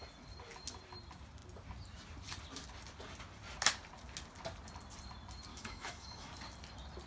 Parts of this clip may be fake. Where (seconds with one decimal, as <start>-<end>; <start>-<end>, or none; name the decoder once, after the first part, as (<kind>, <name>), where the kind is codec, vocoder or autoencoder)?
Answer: 5.5-6.3 (autoencoder, DAC-VAE)